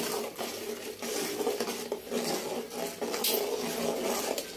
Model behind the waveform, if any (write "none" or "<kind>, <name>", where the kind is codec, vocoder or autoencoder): none